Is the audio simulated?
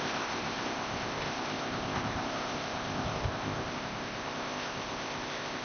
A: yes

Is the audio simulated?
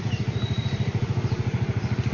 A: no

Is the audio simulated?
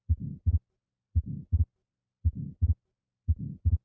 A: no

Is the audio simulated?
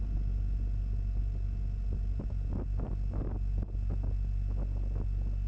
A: no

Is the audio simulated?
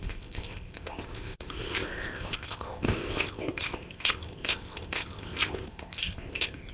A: yes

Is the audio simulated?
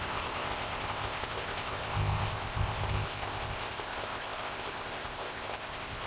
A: yes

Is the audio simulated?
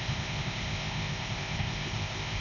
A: yes